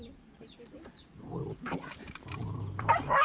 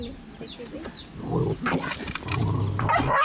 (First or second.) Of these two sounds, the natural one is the second